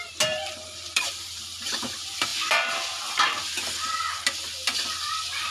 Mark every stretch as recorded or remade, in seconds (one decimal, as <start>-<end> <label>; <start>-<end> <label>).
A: 0.0-2.3 remade; 2.3-5.5 recorded